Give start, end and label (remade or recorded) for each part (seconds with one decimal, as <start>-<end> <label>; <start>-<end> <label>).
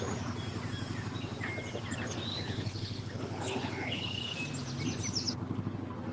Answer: 0.0-2.3 recorded; 2.3-4.2 remade; 4.2-6.1 recorded